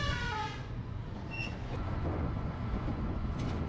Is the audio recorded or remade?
remade